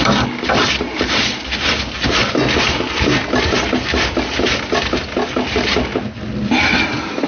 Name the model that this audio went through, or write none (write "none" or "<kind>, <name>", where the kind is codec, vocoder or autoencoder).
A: none